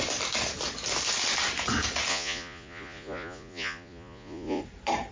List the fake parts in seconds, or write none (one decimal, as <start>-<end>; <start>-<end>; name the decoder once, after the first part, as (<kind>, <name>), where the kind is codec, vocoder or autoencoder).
2.1-4.6 (vocoder, Vocos)